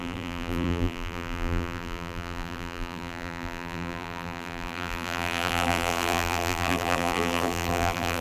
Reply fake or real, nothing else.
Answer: fake